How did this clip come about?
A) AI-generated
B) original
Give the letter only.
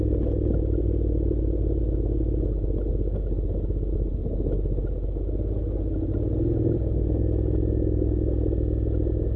B